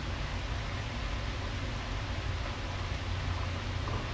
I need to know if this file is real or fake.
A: real